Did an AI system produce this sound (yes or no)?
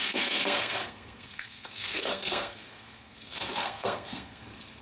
yes